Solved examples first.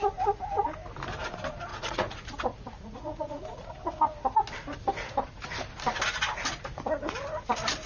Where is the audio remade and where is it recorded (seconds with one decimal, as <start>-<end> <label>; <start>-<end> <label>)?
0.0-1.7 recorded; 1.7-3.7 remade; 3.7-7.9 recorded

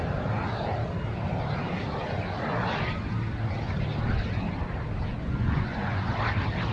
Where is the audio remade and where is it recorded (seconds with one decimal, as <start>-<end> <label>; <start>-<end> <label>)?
0.0-5.1 recorded; 5.1-6.1 remade; 6.1-6.7 recorded

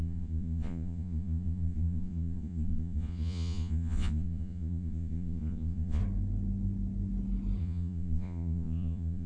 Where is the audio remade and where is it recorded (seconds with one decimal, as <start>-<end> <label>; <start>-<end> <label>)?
0.0-6.0 remade; 6.0-7.6 recorded; 7.6-9.3 remade

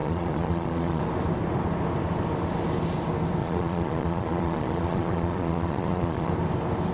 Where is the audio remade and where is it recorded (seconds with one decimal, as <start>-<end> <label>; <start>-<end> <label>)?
0.0-1.0 remade; 1.0-3.4 recorded; 3.4-6.3 remade; 6.3-6.9 recorded

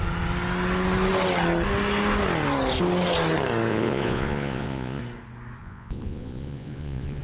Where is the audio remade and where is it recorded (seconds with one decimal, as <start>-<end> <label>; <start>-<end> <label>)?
0.0-3.7 recorded; 3.7-5.0 remade; 5.0-5.6 recorded; 5.6-7.2 remade

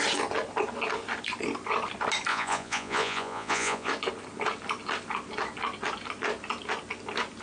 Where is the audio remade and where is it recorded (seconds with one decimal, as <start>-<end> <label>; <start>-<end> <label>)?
0.0-2.3 recorded; 2.3-3.9 remade; 3.9-7.4 recorded